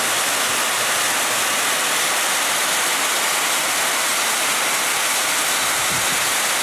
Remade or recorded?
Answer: recorded